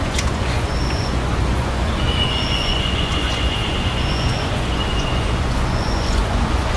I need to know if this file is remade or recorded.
remade